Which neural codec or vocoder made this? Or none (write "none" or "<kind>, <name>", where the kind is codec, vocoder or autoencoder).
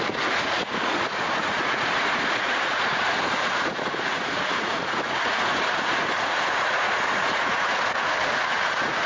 vocoder, Vocos